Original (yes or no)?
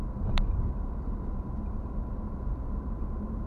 no